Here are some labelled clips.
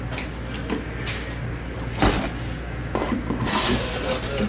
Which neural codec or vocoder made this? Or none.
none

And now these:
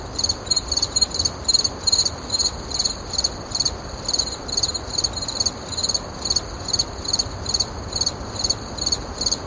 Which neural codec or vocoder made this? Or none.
vocoder, BigVGAN v2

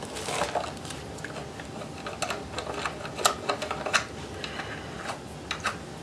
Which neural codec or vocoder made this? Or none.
none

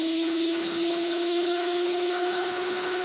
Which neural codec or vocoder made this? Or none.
codec, HILCodec